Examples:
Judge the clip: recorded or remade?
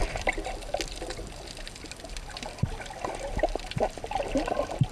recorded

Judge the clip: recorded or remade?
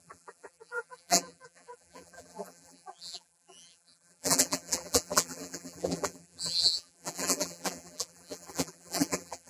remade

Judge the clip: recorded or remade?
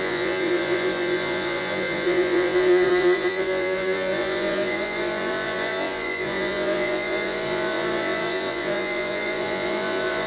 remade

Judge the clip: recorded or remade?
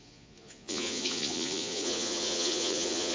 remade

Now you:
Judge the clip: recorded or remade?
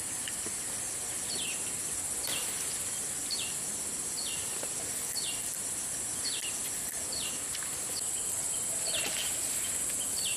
recorded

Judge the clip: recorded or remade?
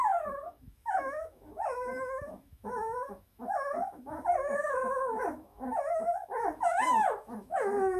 remade